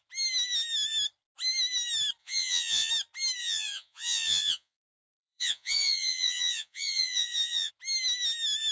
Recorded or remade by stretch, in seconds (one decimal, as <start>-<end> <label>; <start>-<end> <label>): 0.0-2.2 recorded; 2.2-2.9 remade; 2.9-3.4 recorded; 3.4-7.7 remade; 7.7-8.7 recorded